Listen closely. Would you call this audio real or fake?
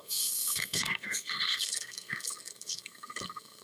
fake